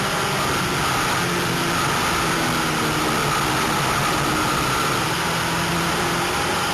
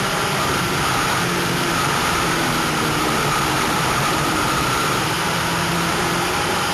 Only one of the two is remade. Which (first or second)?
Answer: second